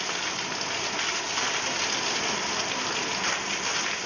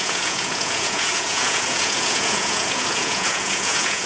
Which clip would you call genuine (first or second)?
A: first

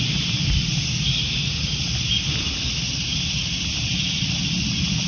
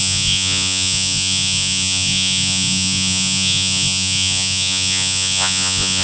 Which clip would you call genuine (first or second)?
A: first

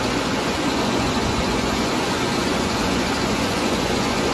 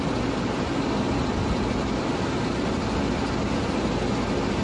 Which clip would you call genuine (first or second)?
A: second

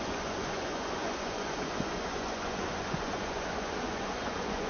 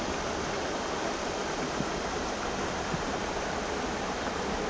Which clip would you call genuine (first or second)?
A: second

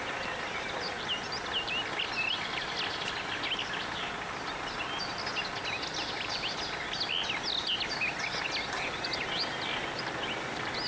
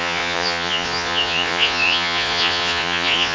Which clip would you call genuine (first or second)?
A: first